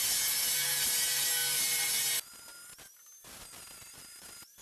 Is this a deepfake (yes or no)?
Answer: no